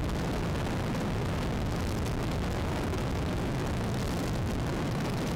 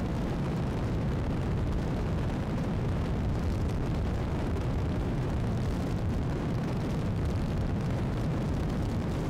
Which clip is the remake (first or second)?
second